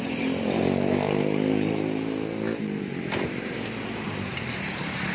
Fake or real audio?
fake